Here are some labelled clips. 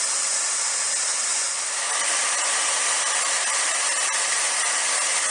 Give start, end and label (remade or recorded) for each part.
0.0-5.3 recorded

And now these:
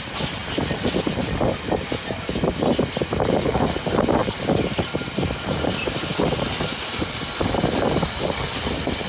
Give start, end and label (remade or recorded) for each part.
0.0-4.2 recorded; 4.2-5.6 remade; 5.6-9.1 recorded